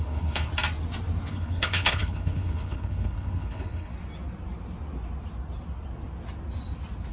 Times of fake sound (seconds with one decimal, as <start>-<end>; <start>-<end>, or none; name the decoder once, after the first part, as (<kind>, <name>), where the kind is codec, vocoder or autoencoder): 0.0-0.5 (codec, HILCodec); 1.3-3.9